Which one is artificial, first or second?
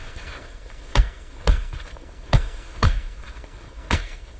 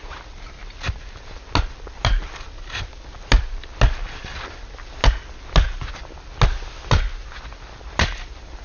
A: first